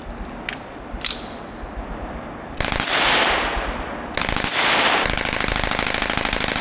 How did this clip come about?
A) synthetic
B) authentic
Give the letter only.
B